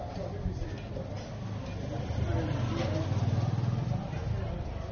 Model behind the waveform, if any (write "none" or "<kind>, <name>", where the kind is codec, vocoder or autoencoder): none